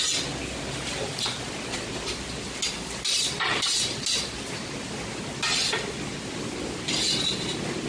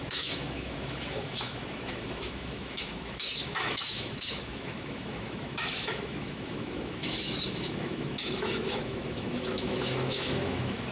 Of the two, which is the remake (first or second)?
second